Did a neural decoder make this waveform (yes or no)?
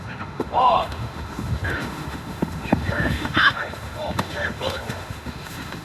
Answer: yes